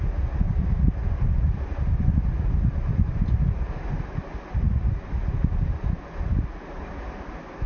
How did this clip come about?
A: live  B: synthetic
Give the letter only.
A